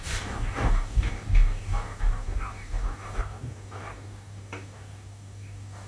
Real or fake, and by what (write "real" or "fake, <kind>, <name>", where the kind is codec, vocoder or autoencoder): fake, codec, DAC